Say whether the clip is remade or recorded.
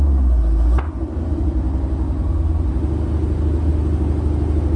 recorded